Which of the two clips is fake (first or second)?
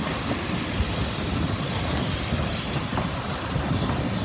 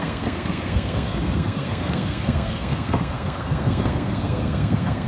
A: second